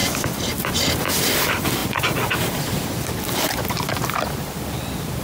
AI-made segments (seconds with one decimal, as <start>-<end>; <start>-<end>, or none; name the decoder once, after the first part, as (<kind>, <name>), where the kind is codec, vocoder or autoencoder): 1.8-2.9 (vocoder, BigVGAN v2)